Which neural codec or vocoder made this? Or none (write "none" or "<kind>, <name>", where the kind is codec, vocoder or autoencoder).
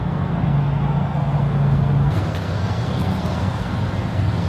codec, SNAC